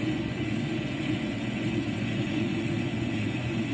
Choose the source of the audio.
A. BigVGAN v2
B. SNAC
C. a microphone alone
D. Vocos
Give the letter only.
D